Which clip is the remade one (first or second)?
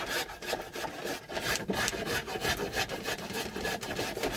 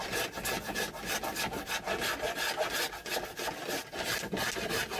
first